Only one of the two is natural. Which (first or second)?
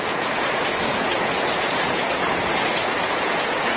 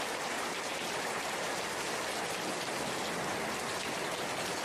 second